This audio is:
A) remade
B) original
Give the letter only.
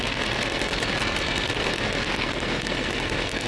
A